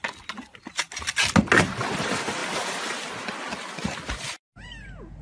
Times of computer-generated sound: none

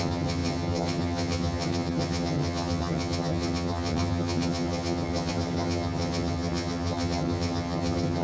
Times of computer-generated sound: 0.0-8.2 (vocoder, HiFi-GAN)

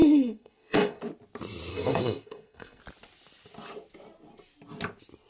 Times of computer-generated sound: 0.0-1.0 (codec, SNAC); 1.7-2.8

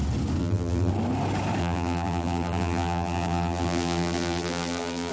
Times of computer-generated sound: 0.4-0.9 (vocoder, BigVGAN v2); 1.6-5.1

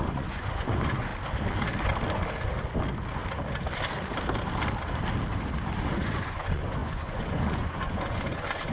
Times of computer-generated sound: 0.0-1.1 (vocoder, Vocos); 5.9-8.7

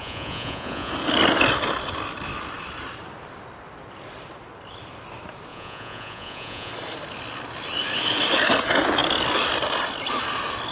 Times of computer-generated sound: 0.0-0.9 (vocoder, Vocos); 5.5-6.7

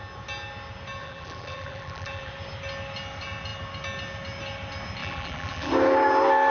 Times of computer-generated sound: 1.0-2.3 (vocoder, BigVGAN v2); 5.0-5.7